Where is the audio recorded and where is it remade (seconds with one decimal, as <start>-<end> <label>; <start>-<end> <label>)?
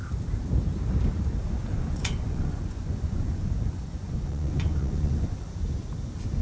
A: 0.0-1.7 recorded; 1.7-5.5 remade; 5.5-6.4 recorded